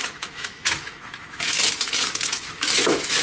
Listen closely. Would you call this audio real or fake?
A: fake